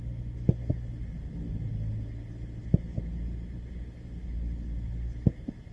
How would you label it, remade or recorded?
recorded